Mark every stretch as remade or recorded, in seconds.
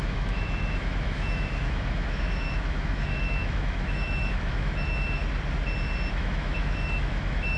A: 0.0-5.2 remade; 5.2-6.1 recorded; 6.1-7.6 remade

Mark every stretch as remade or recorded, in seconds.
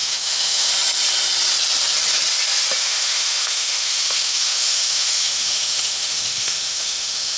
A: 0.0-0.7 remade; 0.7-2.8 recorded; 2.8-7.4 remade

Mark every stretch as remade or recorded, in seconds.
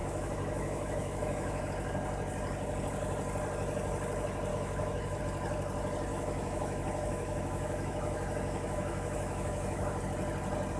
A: 0.0-1.7 remade; 1.7-4.5 recorded; 4.5-5.2 remade; 5.2-6.1 recorded; 6.1-10.0 remade; 10.0-10.8 recorded